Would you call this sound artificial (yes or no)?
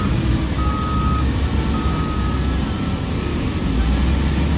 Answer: no